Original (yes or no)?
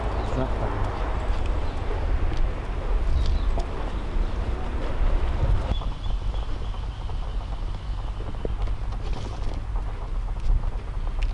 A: yes